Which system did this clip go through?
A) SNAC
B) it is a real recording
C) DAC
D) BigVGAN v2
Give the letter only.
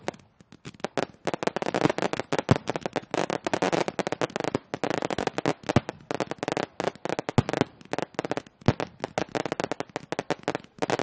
B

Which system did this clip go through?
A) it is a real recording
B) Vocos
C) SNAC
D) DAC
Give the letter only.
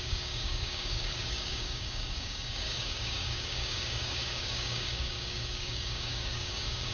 D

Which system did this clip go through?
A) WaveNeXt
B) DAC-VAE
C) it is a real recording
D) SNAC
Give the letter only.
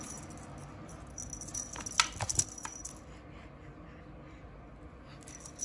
C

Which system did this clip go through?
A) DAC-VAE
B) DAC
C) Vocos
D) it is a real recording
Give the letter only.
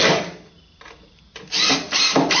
D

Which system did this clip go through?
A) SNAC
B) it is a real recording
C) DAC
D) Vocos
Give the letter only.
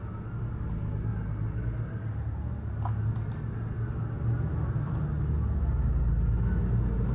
B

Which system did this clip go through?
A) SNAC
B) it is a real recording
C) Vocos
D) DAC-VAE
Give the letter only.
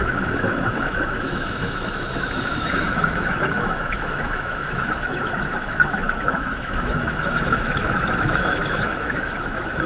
D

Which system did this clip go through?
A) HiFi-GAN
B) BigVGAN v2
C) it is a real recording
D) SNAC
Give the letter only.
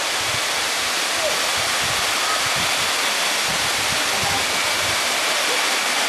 C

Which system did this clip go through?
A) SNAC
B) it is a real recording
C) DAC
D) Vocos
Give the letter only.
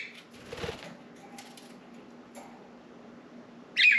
B